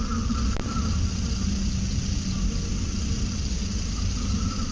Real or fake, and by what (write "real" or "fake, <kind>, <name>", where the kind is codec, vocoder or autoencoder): real